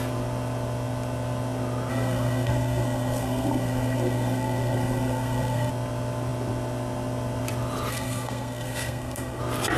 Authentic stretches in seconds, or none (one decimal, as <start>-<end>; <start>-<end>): 0.0-1.9; 5.7-7.9; 9.4-9.8